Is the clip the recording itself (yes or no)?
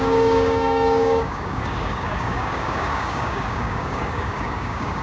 no